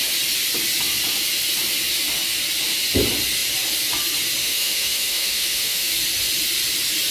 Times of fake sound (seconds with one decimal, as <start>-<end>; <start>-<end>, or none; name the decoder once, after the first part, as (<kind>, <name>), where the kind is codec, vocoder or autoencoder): 4.4-5.9 (autoencoder, DAC-VAE)